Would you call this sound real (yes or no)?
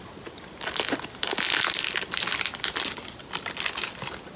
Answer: yes